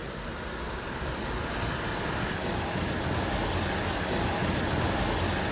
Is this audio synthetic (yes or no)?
no